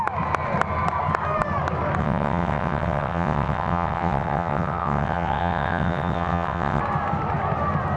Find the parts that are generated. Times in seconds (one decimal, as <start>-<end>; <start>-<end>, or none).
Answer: 2.0-6.8